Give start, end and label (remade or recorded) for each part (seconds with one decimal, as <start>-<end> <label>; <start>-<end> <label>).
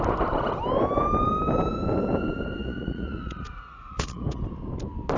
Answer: 0.0-2.6 recorded; 2.6-4.4 remade; 4.4-5.2 recorded